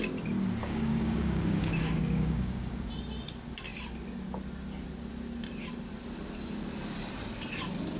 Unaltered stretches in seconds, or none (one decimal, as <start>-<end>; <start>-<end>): 0.0-0.6; 2.9-8.0